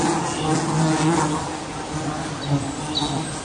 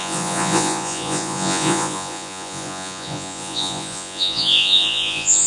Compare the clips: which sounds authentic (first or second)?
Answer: first